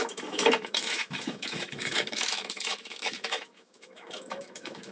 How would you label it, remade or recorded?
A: remade